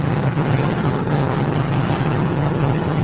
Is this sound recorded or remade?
remade